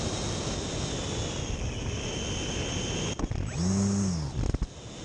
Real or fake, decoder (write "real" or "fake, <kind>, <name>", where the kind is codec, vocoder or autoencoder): real